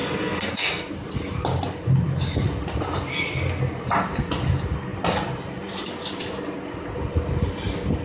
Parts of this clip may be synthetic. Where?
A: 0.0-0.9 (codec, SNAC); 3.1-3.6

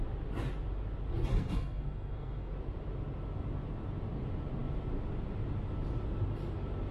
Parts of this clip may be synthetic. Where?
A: 1.3-2.5 (codec, SNAC)

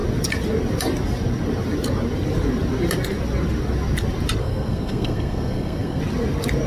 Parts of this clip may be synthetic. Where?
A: 4.4-6.0 (codec, SNAC)

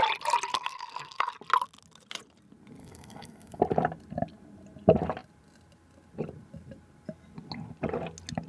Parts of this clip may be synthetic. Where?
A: 0.5-1.3 (codec, SNAC); 2.8-3.6

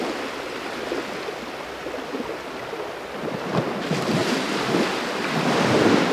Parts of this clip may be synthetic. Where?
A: none

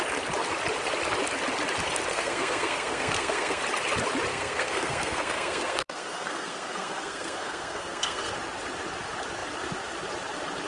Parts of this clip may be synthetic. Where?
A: 2.1-3.6 (codec, SNAC); 4.3-8.3